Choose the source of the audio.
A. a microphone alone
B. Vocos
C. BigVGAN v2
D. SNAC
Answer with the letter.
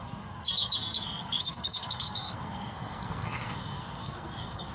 D